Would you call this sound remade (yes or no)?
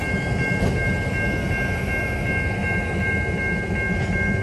no